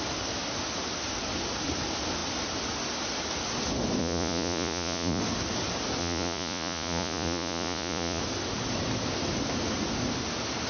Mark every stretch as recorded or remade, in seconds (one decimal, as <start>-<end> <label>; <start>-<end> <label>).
0.0-4.0 recorded; 4.0-5.2 remade; 5.2-6.0 recorded; 6.0-8.2 remade; 8.2-10.7 recorded